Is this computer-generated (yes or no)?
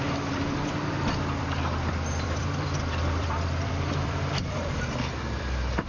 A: yes